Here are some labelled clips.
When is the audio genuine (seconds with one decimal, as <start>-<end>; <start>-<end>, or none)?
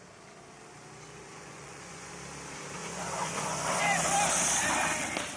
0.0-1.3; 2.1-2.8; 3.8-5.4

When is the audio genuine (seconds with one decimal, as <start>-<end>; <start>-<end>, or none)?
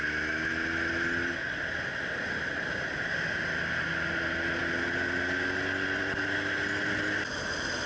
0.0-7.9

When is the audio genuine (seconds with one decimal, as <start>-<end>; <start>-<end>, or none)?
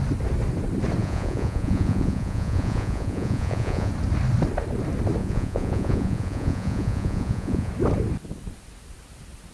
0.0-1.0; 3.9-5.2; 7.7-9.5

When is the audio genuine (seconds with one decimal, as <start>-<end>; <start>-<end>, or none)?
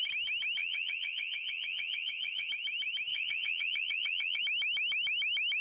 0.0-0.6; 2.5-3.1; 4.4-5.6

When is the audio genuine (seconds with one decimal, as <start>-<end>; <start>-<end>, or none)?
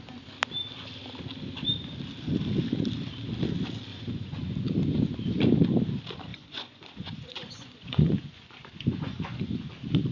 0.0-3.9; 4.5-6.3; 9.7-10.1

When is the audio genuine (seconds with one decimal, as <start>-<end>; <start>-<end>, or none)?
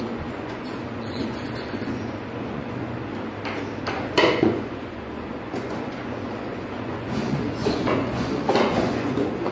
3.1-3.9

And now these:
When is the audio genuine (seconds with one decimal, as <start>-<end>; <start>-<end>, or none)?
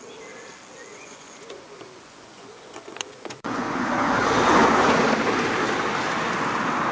0.0-0.9; 5.0-6.9